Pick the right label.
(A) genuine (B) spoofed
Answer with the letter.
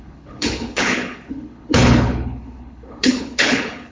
B